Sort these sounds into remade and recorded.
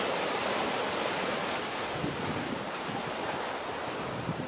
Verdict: recorded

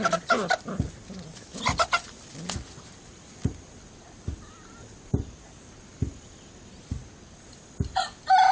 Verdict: recorded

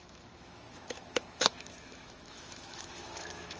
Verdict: remade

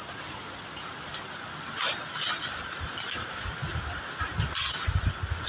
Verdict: recorded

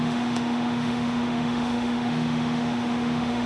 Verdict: remade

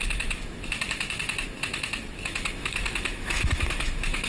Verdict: remade